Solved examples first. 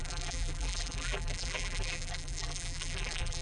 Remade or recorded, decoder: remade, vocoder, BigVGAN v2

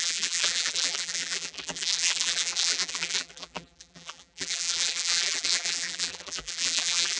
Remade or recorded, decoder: remade, vocoder, BigVGAN v2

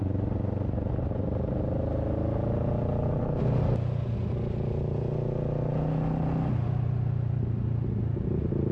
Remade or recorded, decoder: recorded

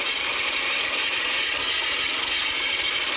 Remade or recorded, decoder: recorded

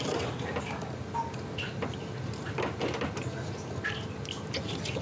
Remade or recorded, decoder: recorded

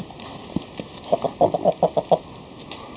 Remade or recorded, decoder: recorded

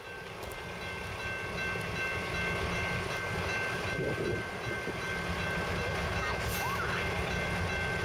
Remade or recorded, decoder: recorded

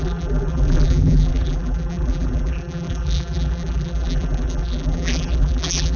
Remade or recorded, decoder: remade, vocoder, BigVGAN v2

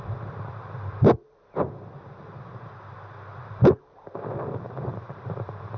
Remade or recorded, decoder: remade, vocoder, BigVGAN v2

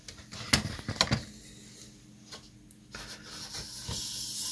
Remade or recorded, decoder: recorded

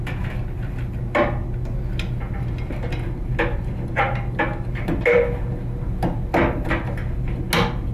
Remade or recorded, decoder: recorded